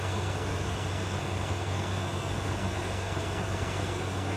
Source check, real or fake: fake